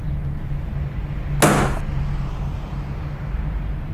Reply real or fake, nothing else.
real